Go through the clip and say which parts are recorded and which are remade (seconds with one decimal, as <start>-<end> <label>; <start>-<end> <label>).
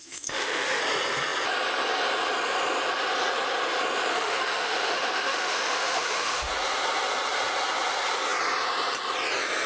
0.0-0.8 remade; 0.8-4.1 recorded; 4.1-6.5 remade; 6.5-9.7 recorded